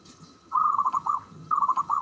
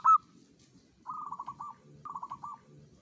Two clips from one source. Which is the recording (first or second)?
second